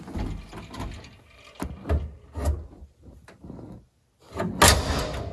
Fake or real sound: real